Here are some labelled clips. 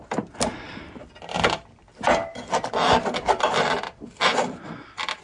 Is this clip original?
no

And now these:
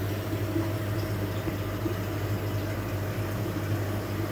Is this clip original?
yes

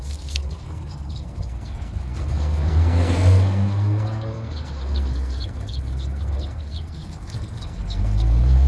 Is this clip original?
no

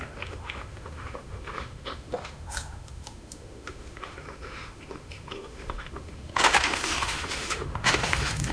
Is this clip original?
no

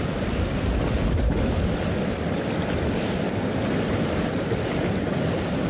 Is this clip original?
yes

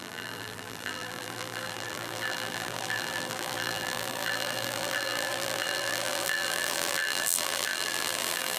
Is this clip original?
no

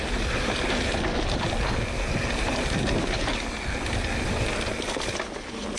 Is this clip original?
yes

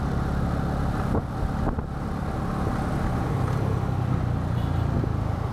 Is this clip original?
yes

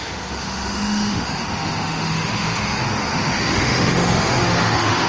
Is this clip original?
no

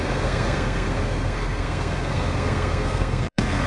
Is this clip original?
no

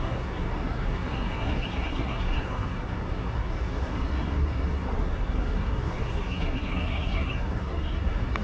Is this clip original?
no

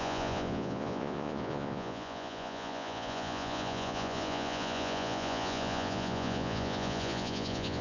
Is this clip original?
no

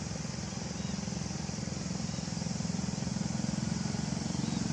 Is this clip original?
yes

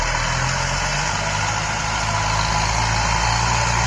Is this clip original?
yes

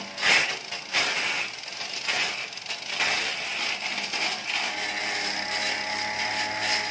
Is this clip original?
yes